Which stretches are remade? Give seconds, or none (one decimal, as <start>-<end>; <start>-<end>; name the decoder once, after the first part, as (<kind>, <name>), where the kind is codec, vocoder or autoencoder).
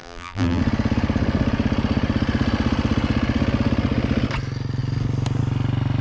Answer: 0.0-0.6 (vocoder, BigVGAN v2)